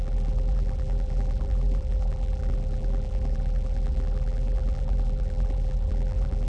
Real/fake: fake